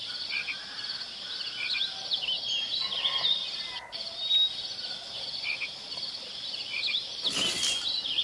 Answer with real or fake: real